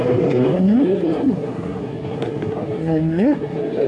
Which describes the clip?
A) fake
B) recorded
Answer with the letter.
A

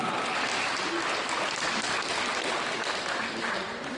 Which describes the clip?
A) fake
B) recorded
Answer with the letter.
B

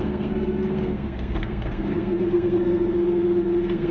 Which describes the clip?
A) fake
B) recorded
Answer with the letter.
A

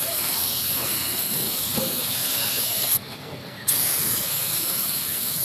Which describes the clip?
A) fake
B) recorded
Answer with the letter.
A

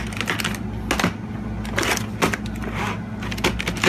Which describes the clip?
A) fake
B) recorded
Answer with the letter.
B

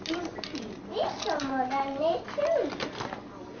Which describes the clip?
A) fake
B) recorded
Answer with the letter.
B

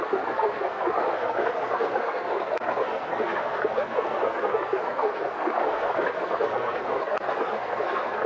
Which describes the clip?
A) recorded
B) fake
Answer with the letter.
B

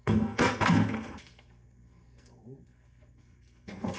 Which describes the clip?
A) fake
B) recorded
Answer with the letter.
A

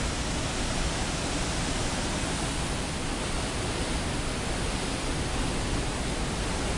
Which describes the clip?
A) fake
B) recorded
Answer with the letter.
B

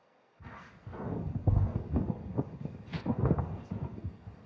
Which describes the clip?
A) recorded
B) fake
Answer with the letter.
B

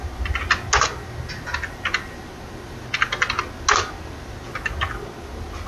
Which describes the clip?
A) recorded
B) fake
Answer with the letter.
A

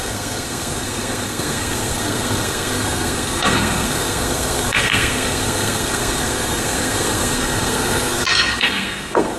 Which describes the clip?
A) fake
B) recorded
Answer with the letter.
A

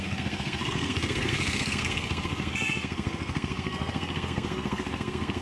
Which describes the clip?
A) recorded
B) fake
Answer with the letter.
B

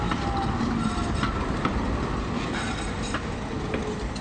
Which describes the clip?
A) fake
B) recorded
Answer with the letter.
B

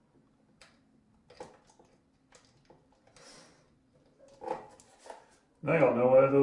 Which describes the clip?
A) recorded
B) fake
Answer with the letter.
A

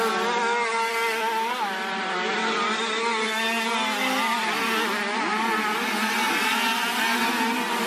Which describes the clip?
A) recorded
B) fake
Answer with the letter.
A